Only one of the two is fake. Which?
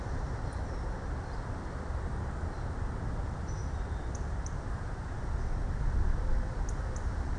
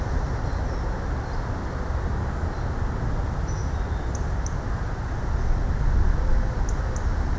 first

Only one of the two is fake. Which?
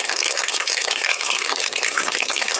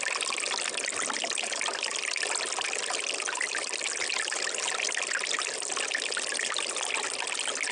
first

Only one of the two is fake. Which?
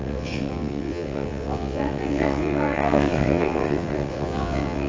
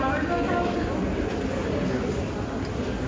first